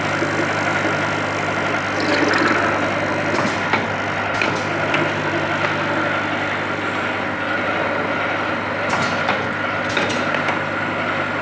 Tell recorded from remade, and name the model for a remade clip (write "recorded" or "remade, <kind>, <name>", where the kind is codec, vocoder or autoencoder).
recorded